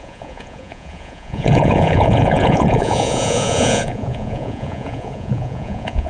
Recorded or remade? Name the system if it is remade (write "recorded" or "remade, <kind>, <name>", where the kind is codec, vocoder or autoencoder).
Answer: remade, vocoder, Vocos